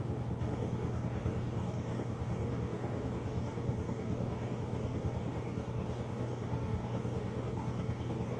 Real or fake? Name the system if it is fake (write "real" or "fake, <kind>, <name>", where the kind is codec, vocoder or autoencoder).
fake, codec, DAC